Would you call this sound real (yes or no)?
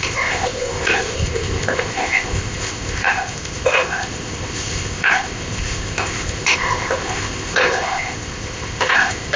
no